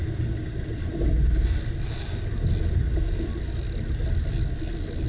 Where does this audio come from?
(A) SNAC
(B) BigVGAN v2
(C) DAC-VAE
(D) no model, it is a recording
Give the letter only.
D